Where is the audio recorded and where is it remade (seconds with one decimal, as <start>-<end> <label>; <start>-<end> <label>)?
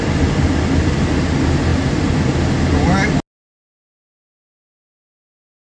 0.0-5.6 recorded